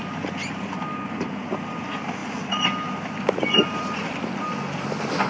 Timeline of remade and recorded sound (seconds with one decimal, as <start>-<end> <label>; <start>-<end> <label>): 0.0-5.3 recorded